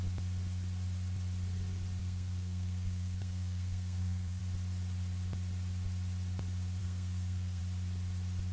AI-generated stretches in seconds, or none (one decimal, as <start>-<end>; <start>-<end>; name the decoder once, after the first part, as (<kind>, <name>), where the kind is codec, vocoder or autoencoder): 2.0-4.4 (codec, SNAC); 6.8-7.6